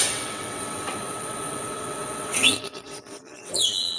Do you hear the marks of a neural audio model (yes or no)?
yes